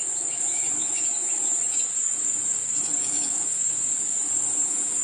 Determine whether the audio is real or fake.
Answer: fake